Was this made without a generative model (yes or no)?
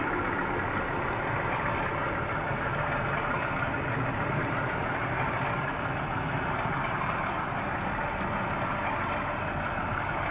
yes